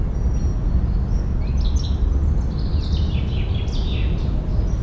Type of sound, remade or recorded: recorded